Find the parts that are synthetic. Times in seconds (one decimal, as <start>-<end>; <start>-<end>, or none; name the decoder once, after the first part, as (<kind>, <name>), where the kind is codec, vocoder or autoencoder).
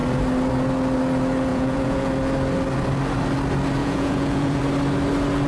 1.5-2.1 (vocoder, Vocos); 3.8-4.6